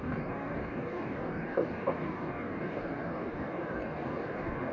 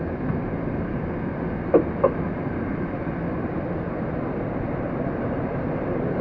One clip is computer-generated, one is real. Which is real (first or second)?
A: second